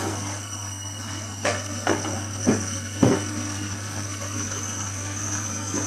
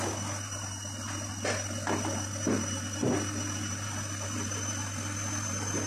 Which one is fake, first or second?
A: first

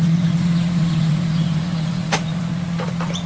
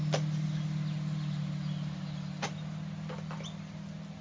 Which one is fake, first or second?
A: first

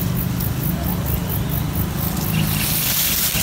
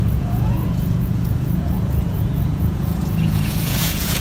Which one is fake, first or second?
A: second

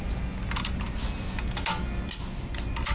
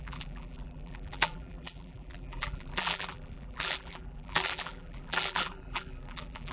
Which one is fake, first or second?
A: second